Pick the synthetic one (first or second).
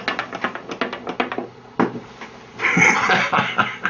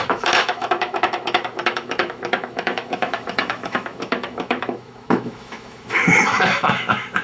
second